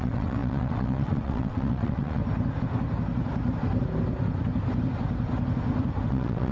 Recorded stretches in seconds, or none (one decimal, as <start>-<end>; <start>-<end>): 2.2-6.1

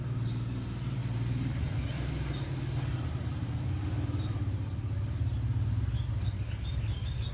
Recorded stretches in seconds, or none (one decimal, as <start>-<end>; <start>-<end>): 0.0-1.0; 2.1-2.9; 4.3-7.3

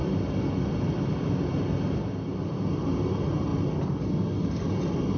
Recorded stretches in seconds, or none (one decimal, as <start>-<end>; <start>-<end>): 0.0-5.2